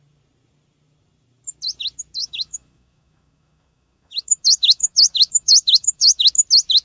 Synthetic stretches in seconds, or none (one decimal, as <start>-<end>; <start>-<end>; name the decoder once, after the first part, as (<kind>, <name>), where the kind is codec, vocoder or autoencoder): 2.2-6.3 (autoencoder, DAC-VAE)